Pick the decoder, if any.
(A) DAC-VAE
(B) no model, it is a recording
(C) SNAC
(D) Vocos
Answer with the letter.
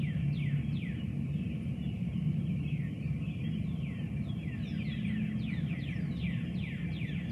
B